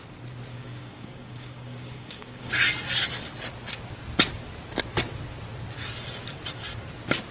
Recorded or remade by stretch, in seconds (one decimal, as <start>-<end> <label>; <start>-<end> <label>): 0.0-0.5 recorded; 0.5-2.5 remade; 2.5-7.3 recorded